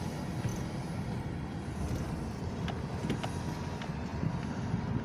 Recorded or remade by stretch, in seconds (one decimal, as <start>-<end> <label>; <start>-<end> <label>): 0.0-4.1 remade; 4.1-5.0 recorded